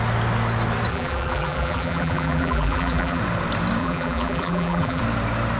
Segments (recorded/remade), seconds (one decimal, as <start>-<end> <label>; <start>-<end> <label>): 0.0-0.9 recorded; 0.9-3.2 remade; 3.2-3.8 recorded; 3.8-5.0 remade; 5.0-5.6 recorded